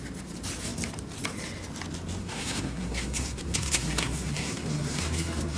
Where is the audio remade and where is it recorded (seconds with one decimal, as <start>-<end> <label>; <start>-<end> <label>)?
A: 0.0-2.2 recorded; 2.2-5.6 remade